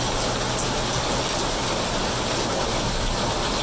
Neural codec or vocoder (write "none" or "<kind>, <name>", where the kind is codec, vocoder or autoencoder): none